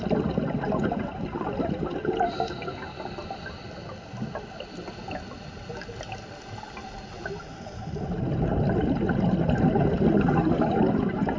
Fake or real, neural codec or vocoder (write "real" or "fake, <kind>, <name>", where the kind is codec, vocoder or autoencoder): real